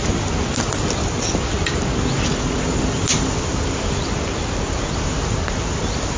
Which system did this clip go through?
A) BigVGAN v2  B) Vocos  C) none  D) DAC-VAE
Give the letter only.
C